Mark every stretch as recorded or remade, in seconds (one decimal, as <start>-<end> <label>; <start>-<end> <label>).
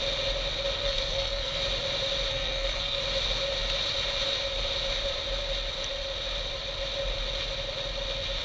0.0-0.8 recorded; 0.8-1.6 remade; 1.6-2.3 recorded; 2.3-3.0 remade; 3.0-8.4 recorded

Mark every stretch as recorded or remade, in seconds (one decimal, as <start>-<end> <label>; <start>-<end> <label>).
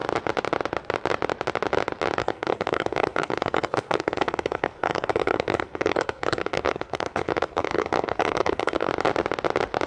0.0-2.2 recorded; 2.2-8.9 remade; 8.9-9.9 recorded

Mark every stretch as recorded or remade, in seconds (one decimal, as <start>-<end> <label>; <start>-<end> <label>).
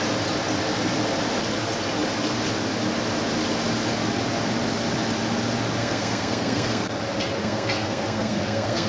0.0-5.8 recorded; 5.8-7.0 remade; 7.0-7.4 recorded; 7.4-8.9 remade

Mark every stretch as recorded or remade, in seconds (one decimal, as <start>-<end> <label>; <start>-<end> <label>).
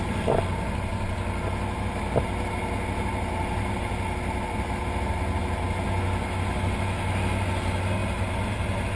0.0-9.0 recorded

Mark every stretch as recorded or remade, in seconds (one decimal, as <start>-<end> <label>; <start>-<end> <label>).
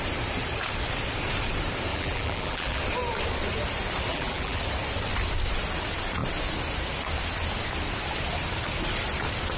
0.0-1.9 recorded; 1.9-2.8 remade; 2.8-4.1 recorded; 4.1-4.6 remade; 4.6-9.6 recorded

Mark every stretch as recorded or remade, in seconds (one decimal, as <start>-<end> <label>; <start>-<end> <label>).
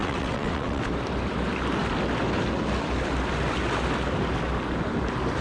0.0-0.8 remade; 0.8-5.4 recorded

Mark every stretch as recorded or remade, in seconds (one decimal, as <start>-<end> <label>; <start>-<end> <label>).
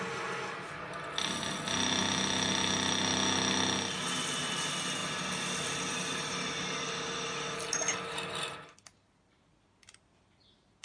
0.0-10.8 recorded